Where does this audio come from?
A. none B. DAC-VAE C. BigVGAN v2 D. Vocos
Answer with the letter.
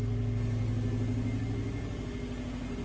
A